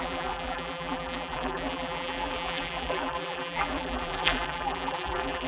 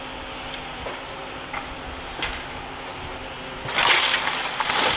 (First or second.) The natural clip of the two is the second